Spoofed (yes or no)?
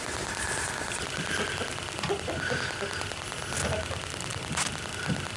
no